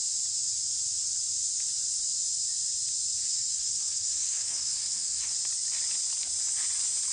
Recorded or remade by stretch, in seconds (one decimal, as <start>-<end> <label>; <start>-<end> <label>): 0.0-3.3 recorded; 3.3-5.3 remade; 5.3-7.1 recorded